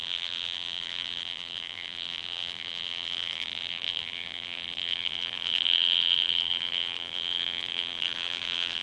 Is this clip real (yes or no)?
no